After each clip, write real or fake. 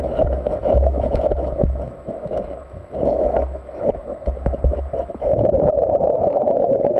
fake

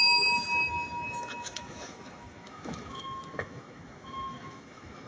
fake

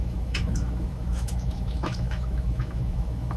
fake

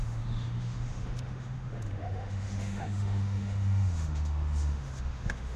fake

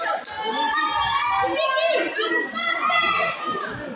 real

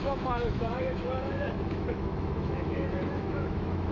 fake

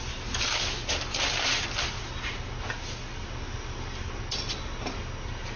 real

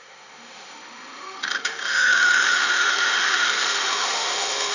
fake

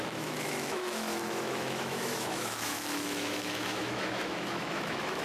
fake